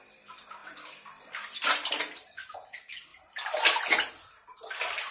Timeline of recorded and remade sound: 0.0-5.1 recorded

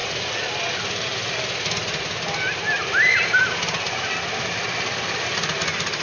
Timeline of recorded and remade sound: 0.0-6.0 recorded

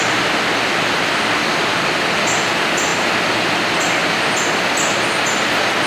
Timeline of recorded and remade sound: 0.0-5.9 recorded